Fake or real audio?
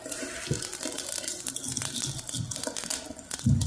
real